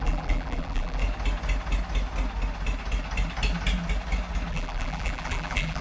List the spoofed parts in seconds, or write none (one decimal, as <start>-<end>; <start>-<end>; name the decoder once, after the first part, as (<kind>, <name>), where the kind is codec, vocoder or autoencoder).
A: 0.0-1.0 (vocoder, BigVGAN v2); 4.5-5.8